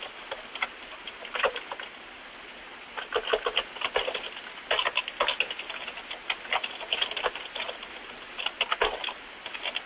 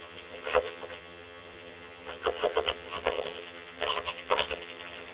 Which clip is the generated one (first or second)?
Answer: second